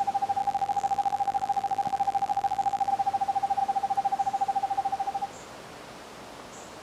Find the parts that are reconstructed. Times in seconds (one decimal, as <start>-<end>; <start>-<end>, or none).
0.4-2.9